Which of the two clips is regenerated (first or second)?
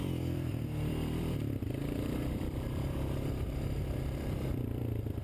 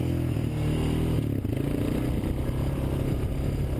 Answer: first